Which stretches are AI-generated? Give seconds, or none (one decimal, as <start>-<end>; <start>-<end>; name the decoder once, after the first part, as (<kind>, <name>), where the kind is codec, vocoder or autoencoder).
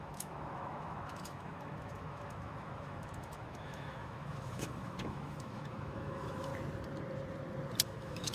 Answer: 0.0-6.5 (autoencoder, DAC-VAE); 7.8-8.3